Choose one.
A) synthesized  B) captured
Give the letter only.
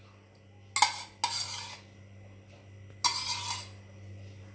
B